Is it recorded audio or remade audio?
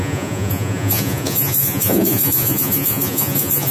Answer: remade